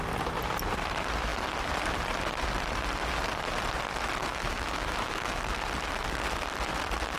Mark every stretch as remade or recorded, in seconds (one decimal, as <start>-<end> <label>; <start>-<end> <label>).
0.0-4.2 recorded; 4.2-5.4 remade; 5.4-7.2 recorded